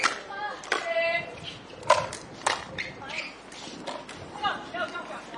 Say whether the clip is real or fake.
real